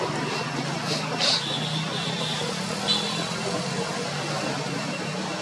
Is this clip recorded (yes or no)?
yes